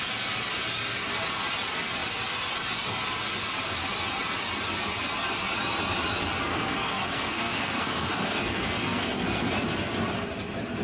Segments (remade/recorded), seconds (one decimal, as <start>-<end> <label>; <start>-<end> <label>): 0.0-6.5 recorded; 6.5-9.5 remade; 9.5-10.8 recorded